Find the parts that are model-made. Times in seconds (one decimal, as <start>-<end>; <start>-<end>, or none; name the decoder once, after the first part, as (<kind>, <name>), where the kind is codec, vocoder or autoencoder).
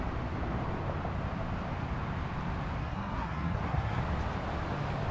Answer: 2.8-4.0 (codec, SNAC)